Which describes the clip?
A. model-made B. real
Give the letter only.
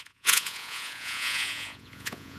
A